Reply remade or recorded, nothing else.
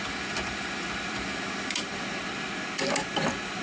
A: remade